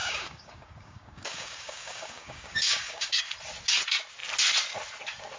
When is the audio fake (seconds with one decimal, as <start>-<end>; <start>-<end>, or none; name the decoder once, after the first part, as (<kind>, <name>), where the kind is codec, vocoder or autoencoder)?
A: 0.0-3.2 (codec, DAC)